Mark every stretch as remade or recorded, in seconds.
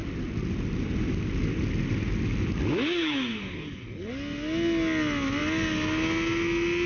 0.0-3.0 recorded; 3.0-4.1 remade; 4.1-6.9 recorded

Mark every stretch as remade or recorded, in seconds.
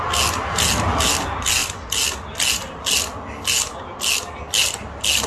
0.0-5.3 recorded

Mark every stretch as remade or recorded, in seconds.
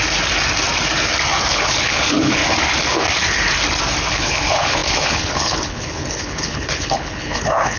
0.0-1.5 recorded; 1.5-2.4 remade; 2.4-4.1 recorded; 4.1-7.8 remade